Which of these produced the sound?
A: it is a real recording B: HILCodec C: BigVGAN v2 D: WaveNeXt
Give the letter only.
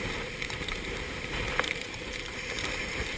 C